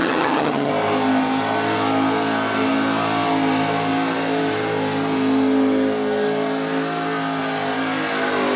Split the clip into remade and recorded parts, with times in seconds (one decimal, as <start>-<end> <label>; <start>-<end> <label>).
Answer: 0.0-0.7 remade; 0.7-8.6 recorded